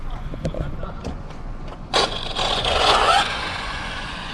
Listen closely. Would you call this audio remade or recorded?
remade